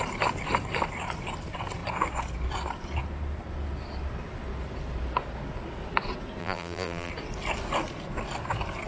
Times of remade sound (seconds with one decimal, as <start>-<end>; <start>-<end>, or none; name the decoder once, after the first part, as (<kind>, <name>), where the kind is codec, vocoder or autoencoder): 6.4-7.1 (vocoder, BigVGAN v2)